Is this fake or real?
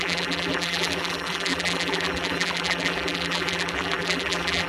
fake